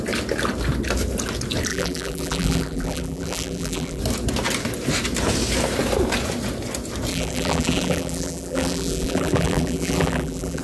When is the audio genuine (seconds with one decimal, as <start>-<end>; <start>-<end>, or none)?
0.0-1.7; 4.0-7.1